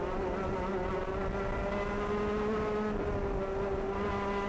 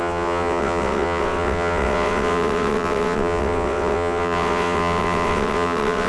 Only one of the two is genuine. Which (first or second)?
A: first